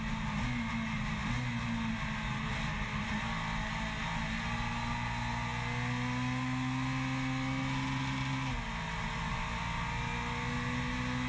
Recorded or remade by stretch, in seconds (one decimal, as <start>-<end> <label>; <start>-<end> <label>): 0.0-11.3 recorded